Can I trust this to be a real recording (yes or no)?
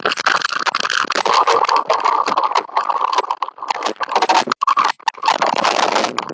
yes